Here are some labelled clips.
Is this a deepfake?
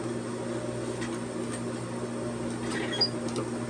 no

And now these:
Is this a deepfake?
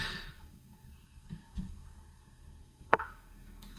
yes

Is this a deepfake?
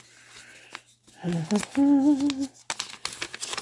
no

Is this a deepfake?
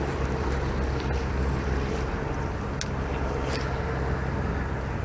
no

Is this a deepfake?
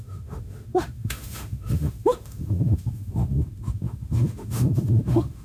yes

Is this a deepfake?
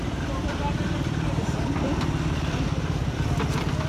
yes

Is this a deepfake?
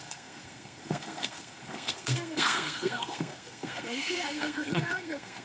yes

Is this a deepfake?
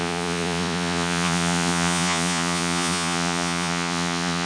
yes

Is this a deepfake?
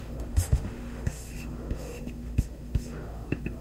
yes